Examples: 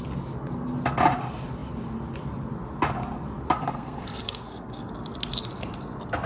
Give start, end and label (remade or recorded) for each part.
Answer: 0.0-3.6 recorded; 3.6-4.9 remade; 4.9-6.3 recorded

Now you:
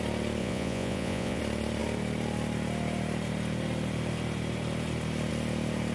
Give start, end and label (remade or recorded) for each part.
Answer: 0.0-0.4 recorded; 0.4-1.4 remade; 1.4-5.9 recorded

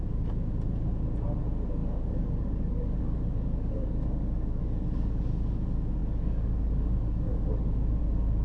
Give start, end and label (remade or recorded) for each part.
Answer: 0.0-1.8 recorded; 1.8-5.2 remade; 5.2-6.0 recorded; 6.0-8.0 remade; 8.0-8.4 recorded

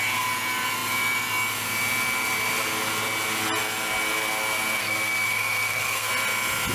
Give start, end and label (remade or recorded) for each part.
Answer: 0.0-4.8 recorded; 4.8-6.1 remade; 6.1-6.7 recorded

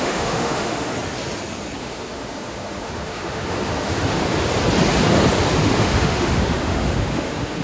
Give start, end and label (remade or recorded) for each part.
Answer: 0.0-0.9 remade; 0.9-1.8 recorded; 1.8-4.3 remade; 4.3-5.5 recorded; 5.5-7.6 remade

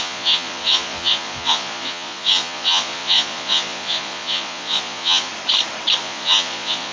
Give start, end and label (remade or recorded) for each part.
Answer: 0.0-5.3 remade; 5.3-6.0 recorded; 6.0-6.9 remade